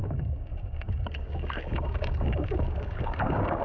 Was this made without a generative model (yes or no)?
no